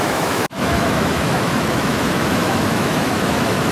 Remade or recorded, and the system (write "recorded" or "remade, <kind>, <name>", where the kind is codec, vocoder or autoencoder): remade, autoencoder, DAC-VAE